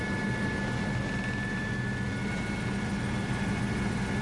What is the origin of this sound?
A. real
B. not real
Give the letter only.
A